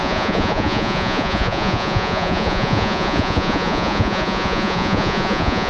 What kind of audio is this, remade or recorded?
remade